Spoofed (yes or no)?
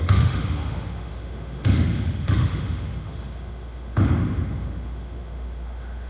yes